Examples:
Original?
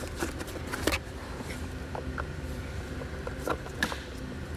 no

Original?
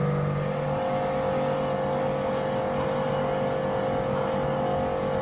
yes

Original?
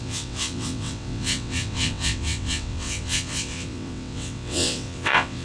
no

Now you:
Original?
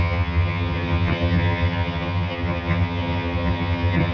no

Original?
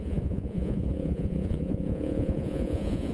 no